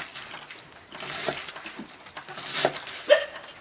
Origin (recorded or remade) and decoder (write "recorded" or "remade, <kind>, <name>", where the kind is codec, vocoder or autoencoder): recorded